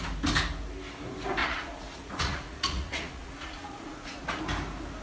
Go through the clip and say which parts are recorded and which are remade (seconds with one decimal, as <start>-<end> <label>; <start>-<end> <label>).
0.0-1.4 recorded; 1.4-4.4 remade; 4.4-5.0 recorded